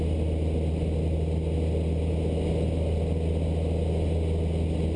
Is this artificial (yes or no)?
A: no